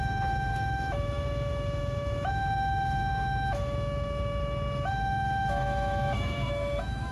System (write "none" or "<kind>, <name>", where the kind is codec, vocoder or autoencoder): autoencoder, DAC-VAE